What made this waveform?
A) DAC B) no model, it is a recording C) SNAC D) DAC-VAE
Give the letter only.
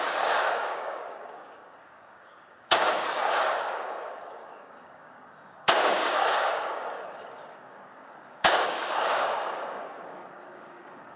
A